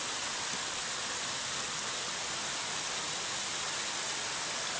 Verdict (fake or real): real